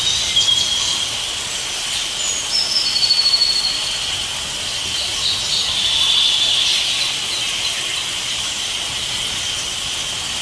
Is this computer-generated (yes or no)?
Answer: no